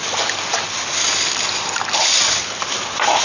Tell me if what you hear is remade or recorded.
recorded